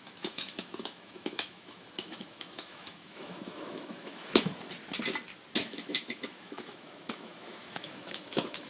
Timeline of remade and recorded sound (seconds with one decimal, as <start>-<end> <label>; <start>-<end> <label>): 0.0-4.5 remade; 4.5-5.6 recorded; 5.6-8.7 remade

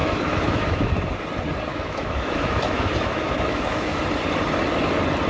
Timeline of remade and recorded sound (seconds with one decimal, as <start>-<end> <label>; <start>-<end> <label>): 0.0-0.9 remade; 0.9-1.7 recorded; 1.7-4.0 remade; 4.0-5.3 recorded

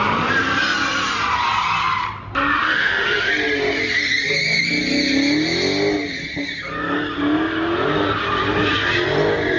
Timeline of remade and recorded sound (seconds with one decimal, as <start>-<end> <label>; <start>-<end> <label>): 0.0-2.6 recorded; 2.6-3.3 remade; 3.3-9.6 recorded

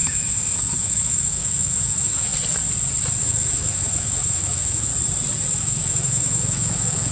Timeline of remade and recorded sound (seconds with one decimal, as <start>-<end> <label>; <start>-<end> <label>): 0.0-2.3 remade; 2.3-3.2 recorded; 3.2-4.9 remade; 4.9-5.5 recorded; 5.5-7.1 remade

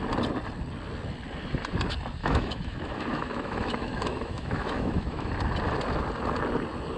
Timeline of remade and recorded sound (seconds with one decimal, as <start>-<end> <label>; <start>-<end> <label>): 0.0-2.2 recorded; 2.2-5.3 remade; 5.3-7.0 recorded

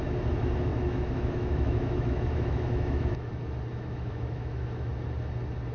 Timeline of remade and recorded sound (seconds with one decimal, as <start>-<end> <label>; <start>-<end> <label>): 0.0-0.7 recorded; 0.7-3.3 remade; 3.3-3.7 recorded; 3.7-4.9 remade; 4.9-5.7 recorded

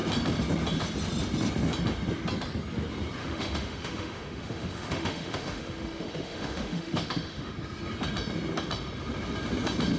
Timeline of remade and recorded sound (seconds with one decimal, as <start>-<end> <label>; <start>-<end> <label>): 0.0-3.2 recorded; 3.2-7.5 remade; 7.5-10.0 recorded

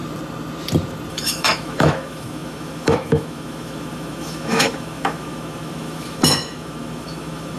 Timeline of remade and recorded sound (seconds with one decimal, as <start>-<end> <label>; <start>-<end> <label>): 0.0-1.1 recorded; 1.1-7.6 remade